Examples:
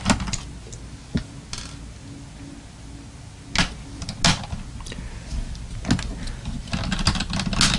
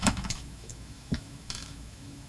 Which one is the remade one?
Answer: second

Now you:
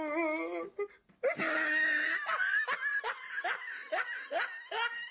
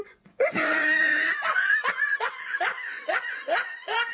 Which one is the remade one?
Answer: second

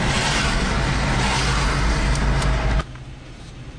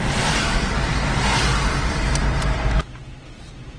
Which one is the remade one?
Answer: second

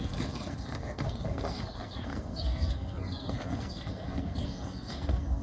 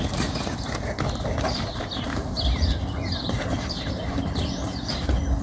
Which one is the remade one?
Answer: first